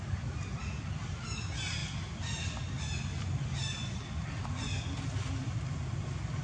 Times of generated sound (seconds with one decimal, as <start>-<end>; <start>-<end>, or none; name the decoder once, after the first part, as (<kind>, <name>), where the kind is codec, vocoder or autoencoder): none